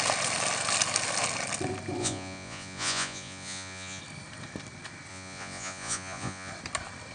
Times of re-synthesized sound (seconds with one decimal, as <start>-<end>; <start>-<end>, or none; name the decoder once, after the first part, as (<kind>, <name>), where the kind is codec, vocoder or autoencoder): 2.0-4.0 (vocoder, Vocos); 5.1-6.5

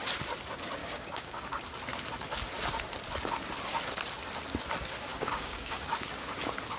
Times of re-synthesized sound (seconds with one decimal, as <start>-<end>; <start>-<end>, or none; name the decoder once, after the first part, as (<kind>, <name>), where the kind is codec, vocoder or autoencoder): 0.8-1.4 (codec, DAC); 5.1-5.9

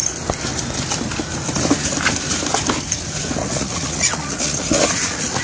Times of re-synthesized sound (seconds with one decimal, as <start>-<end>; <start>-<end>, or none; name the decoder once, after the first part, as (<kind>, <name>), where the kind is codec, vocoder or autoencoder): 3.4-5.4 (vocoder, Vocos)

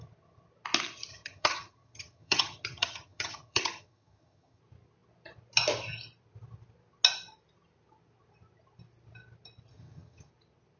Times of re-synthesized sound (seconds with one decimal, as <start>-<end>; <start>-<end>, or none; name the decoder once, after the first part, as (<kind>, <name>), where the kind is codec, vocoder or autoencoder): 1.1-4.6 (vocoder, HiFi-GAN); 9.7-10.3

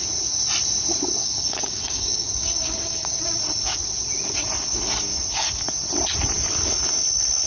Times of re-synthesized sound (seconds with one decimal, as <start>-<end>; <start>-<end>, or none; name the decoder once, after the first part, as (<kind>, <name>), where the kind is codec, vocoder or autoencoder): 1.2-3.2 (codec, DAC)

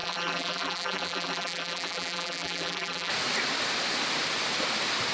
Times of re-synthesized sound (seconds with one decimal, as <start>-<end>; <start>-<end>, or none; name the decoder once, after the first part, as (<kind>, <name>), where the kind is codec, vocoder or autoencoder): 0.0-3.1 (vocoder, BigVGAN v2)

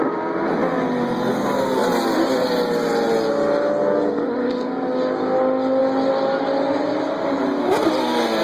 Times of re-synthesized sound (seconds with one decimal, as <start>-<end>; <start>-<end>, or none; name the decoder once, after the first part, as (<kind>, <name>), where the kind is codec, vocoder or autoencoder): none

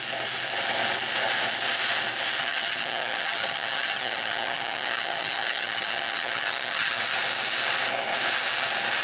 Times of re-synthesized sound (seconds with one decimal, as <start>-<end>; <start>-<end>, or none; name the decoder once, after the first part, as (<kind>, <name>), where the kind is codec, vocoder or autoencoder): 2.4-7.0 (vocoder, HiFi-GAN)